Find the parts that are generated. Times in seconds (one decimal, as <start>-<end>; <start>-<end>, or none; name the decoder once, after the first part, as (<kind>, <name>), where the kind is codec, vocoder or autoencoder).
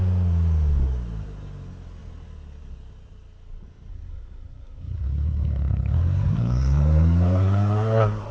3.9-8.3 (codec, SNAC)